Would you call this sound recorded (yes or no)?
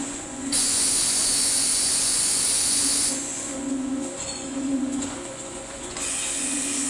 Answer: no